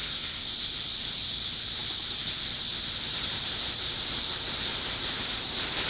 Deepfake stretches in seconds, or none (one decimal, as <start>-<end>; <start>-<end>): 0.0-0.5